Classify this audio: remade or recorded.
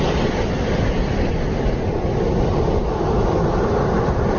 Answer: recorded